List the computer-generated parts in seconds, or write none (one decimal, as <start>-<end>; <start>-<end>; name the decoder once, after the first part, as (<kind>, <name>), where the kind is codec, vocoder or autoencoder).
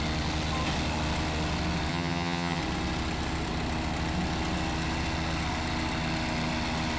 1.9-2.6 (vocoder, HiFi-GAN)